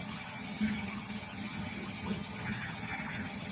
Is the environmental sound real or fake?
fake